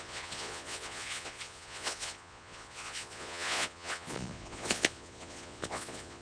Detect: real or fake fake